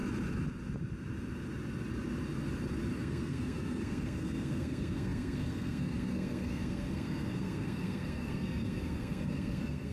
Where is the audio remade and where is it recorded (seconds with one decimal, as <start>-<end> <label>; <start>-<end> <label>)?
0.0-3.0 recorded; 3.0-9.9 remade